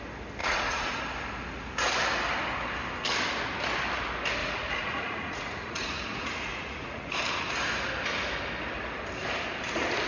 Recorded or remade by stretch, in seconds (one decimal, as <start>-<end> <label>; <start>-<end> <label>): 0.0-0.4 recorded; 0.4-1.0 remade; 1.0-4.4 recorded; 4.4-7.1 remade; 7.1-10.1 recorded